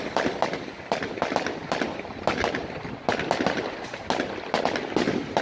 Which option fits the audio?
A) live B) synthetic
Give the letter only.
A